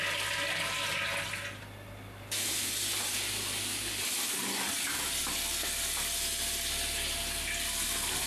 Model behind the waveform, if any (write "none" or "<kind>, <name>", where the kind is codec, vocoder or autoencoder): none